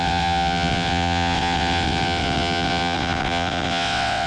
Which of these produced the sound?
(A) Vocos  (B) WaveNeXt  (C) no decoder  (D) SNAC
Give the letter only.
B